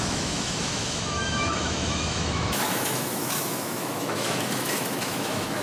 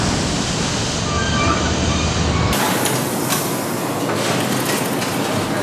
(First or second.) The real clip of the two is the second